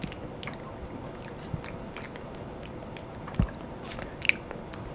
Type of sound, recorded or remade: recorded